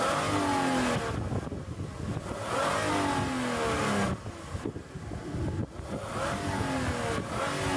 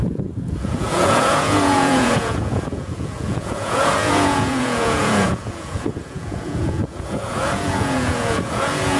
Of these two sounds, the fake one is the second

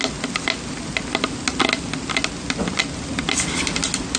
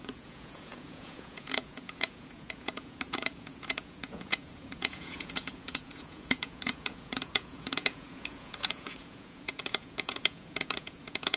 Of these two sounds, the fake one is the second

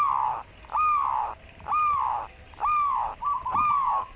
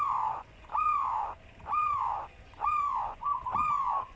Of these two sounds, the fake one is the second